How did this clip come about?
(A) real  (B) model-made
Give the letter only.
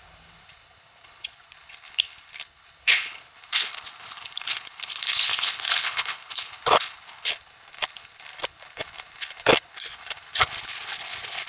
B